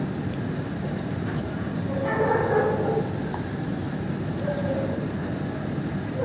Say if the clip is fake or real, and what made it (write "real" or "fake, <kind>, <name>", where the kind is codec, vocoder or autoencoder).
real